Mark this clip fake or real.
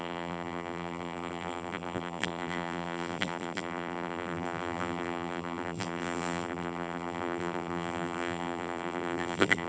fake